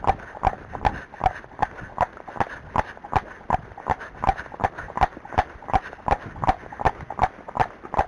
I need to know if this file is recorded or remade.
recorded